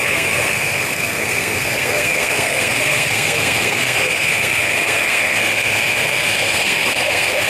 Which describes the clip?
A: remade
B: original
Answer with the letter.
A